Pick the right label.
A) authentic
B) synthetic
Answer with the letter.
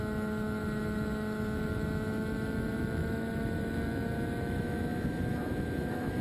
B